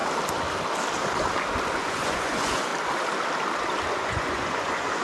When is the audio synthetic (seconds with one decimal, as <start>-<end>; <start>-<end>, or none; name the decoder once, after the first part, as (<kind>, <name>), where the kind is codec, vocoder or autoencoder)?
1.8-2.7 (vocoder, Vocos); 3.9-5.0

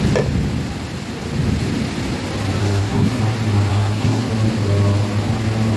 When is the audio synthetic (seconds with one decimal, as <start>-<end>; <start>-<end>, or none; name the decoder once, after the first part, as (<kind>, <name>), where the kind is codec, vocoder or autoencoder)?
2.6-3.2 (codec, SNAC); 3.7-4.3